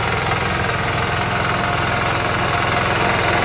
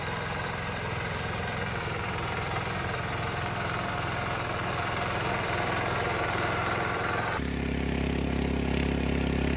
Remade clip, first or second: second